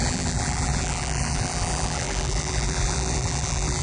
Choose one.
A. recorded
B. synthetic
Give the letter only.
B